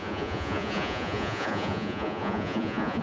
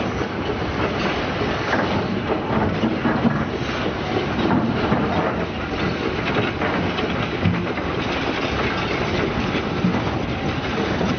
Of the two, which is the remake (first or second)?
first